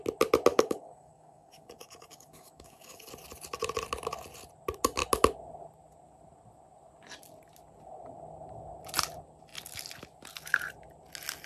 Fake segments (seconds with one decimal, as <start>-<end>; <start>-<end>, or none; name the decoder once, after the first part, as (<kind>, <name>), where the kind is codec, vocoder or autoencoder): 0.5-3.1 (codec, DAC)